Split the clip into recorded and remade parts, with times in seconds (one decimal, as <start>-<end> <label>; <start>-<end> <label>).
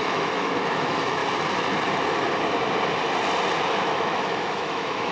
0.0-1.2 remade; 1.2-3.7 recorded; 3.7-5.1 remade